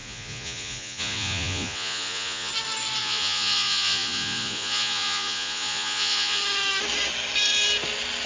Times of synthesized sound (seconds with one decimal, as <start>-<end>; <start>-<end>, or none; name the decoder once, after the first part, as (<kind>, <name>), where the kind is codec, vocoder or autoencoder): 0.0-2.5 (vocoder, Vocos); 3.0-6.4